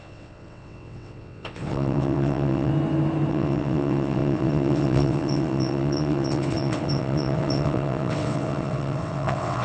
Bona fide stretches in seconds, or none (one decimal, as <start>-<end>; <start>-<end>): 2.7-3.3